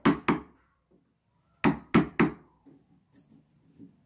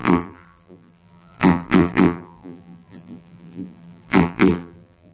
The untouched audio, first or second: first